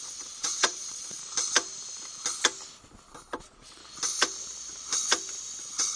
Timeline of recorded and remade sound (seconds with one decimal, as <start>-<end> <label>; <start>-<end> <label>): 0.0-1.2 remade; 1.2-3.4 recorded; 3.4-3.8 remade; 3.8-5.6 recorded; 5.6-6.0 remade